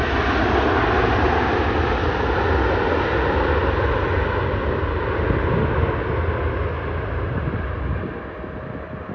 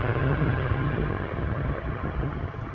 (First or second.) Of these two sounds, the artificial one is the second